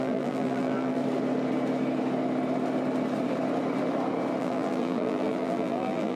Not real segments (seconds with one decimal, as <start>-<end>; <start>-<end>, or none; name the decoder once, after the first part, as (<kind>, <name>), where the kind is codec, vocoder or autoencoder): 0.0-1.0 (vocoder, BigVGAN v2); 4.4-6.2